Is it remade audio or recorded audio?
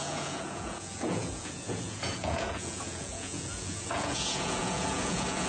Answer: remade